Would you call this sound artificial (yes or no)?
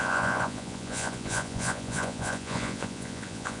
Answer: yes